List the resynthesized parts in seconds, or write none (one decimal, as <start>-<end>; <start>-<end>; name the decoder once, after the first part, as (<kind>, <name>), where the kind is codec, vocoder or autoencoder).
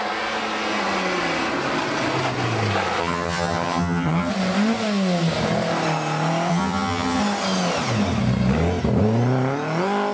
3.0-4.3 (vocoder, HiFi-GAN); 6.5-7.2